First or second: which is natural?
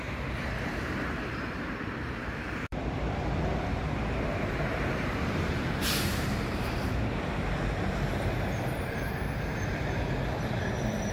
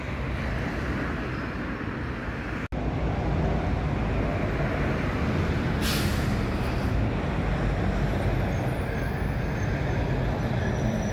second